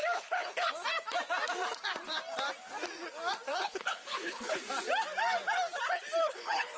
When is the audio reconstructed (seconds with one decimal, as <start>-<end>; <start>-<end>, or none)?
0.0-0.7; 3.5-4.6; 6.2-6.8